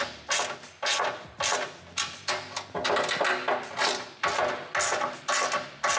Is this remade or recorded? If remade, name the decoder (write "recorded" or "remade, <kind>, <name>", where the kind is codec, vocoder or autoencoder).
recorded